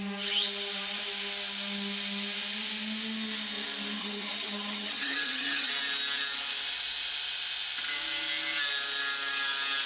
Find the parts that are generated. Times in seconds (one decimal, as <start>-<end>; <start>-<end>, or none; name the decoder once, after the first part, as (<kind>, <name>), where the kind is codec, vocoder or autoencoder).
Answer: 4.0-5.7 (vocoder, HiFi-GAN)